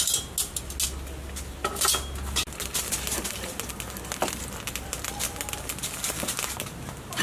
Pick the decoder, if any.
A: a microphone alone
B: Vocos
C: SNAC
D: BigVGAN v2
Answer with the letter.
A